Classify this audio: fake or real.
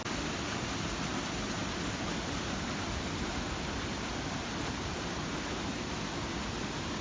real